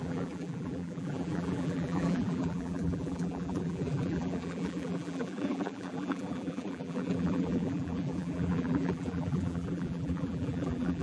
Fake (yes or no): yes